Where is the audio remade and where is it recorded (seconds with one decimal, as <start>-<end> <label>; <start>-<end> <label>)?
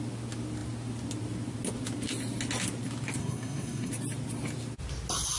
0.0-3.2 recorded; 3.2-3.9 remade; 3.9-5.4 recorded